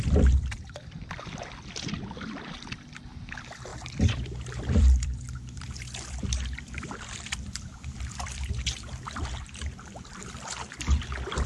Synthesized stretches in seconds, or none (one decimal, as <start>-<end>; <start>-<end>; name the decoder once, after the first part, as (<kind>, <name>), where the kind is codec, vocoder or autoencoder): 3.7-8.5 (vocoder, BigVGAN v2)